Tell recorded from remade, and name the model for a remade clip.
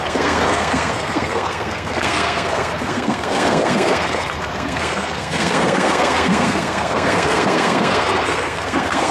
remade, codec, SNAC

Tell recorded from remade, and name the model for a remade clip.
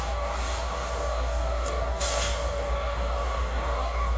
remade, codec, DAC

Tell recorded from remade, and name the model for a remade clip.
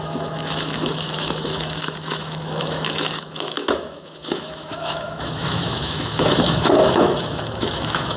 remade, autoencoder, DAC-VAE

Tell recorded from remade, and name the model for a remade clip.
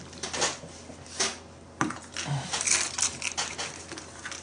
recorded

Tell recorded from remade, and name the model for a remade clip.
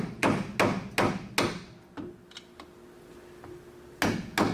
recorded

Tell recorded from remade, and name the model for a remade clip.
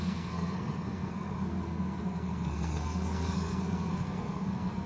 remade, codec, SNAC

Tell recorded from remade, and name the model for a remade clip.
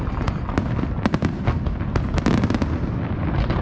recorded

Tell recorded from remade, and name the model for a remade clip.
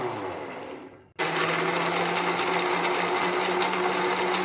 recorded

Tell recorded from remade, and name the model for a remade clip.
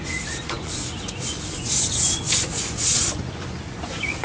remade, vocoder, Vocos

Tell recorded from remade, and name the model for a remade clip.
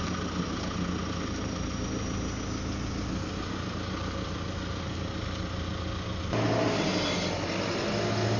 recorded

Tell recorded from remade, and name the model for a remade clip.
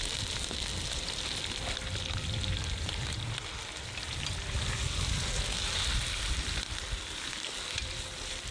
recorded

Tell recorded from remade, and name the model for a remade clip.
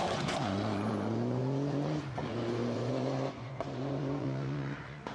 remade, vocoder, Vocos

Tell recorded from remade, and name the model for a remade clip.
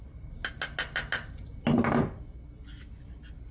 recorded